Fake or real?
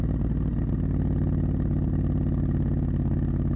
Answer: real